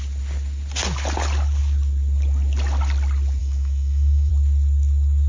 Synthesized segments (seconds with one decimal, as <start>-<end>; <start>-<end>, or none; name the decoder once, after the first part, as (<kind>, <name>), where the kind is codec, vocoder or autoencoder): 3.4-4.3 (autoencoder, DAC-VAE)